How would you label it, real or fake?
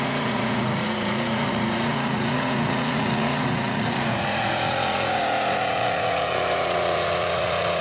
fake